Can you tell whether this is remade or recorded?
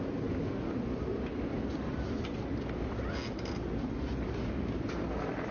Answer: recorded